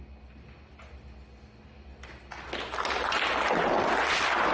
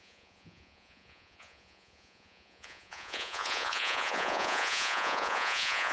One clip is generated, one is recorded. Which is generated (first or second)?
second